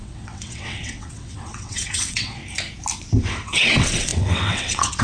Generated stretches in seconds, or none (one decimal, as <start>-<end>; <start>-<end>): 0.0-2.4; 3.2-5.0